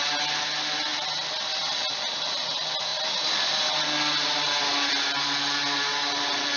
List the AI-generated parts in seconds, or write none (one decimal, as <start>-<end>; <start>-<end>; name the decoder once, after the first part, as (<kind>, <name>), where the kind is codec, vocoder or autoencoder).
none